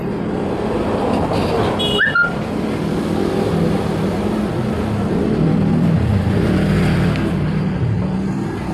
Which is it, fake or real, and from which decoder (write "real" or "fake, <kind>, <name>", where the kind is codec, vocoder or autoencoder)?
real